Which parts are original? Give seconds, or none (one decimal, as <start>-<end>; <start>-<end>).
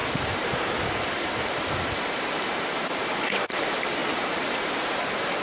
none